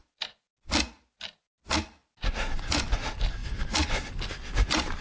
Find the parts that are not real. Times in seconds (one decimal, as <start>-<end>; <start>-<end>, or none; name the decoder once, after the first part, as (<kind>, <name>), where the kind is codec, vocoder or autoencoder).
none